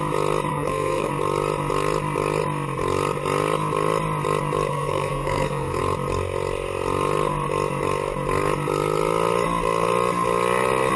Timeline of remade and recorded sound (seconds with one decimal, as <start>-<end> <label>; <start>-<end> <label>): 0.0-0.5 recorded; 0.5-1.1 remade; 1.1-4.7 recorded; 4.7-5.8 remade; 5.8-11.0 recorded